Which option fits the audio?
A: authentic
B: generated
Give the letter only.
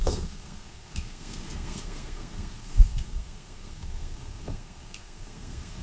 B